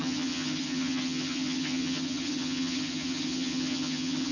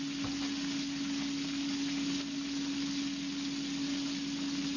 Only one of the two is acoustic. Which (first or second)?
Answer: second